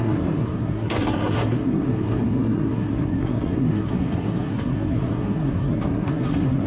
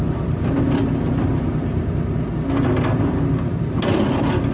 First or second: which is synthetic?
first